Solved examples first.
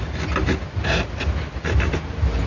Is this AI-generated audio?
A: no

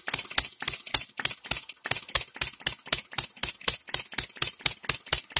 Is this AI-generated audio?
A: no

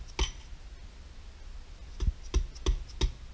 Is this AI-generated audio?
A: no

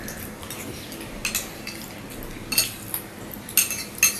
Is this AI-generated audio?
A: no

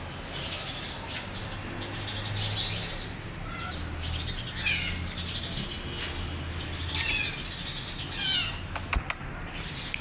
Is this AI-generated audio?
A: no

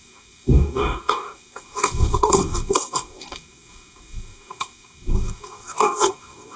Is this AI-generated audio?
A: yes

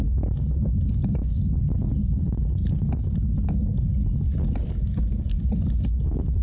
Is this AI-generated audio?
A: no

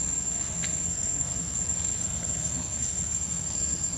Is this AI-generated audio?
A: yes